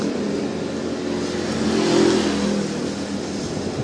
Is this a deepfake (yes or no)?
no